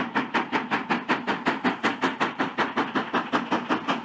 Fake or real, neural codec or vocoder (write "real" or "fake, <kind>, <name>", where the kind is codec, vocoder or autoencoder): real